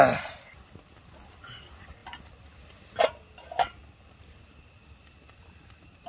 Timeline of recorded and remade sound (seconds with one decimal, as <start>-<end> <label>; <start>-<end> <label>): 0.0-6.1 recorded